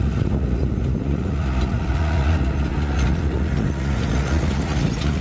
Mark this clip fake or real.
fake